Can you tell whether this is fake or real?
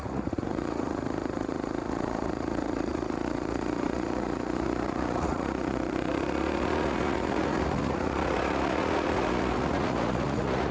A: fake